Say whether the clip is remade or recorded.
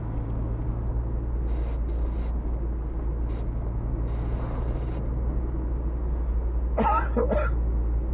recorded